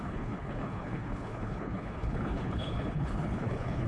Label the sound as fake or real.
fake